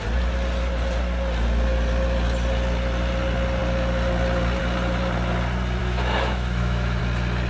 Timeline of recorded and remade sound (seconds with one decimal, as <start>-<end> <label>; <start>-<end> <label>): 0.0-5.8 recorded; 5.8-7.0 remade; 7.0-7.5 recorded